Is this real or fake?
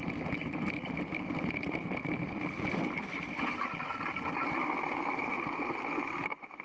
real